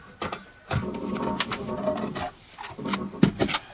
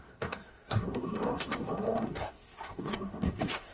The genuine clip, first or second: first